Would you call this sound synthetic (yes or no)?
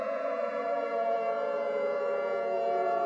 yes